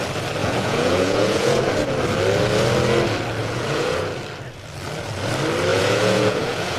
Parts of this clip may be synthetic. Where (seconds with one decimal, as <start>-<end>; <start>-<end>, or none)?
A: 0.4-1.6; 3.4-4.2; 5.7-6.8